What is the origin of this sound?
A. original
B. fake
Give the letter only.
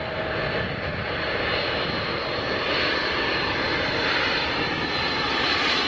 A